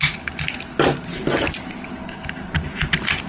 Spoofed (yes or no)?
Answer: no